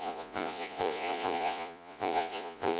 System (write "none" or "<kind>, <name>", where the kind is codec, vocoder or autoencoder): vocoder, Vocos